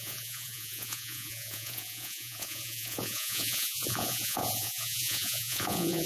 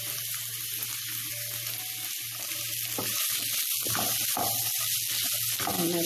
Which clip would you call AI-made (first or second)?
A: first